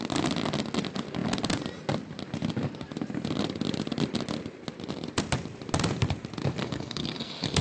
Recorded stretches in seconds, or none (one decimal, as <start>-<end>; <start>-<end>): 0.0-6.6

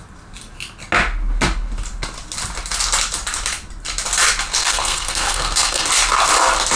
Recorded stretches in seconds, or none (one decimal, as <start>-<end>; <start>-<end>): 0.0-4.6; 5.9-6.8

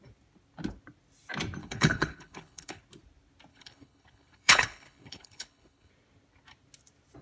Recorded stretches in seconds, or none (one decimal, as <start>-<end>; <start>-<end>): 0.0-1.6; 2.8-3.5; 5.9-7.2

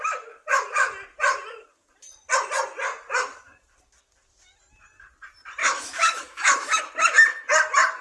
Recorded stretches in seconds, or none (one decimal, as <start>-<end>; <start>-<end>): 0.0-5.6; 6.8-8.0

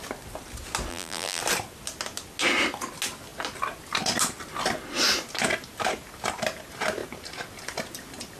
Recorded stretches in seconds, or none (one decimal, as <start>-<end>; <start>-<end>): 0.0-0.9; 1.4-8.4

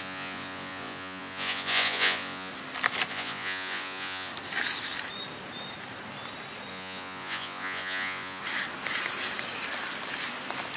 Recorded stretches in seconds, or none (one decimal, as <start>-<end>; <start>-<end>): 2.5-3.1; 4.3-6.7; 8.4-10.8